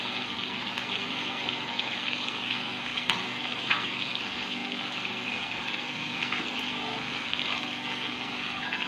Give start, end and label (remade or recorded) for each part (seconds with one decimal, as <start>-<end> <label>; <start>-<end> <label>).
0.0-8.9 remade